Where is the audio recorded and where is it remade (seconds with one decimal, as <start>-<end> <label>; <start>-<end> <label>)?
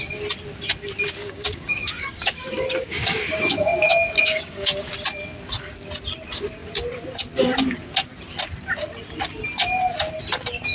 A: 0.0-1.2 recorded; 1.2-4.9 remade; 4.9-10.7 recorded